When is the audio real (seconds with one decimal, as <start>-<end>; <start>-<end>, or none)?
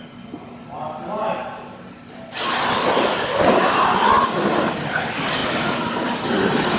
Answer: 0.0-6.8